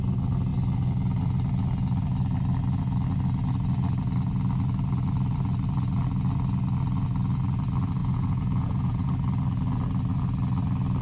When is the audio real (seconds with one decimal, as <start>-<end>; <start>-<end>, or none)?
0.0-8.0; 9.1-11.0